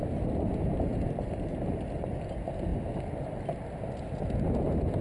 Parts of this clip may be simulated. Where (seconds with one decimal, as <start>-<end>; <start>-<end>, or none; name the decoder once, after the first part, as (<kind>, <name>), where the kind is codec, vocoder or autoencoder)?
0.9-2.1 (vocoder, BigVGAN v2)